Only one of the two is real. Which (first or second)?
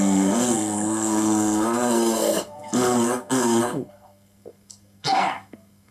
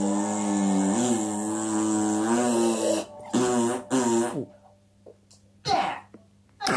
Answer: second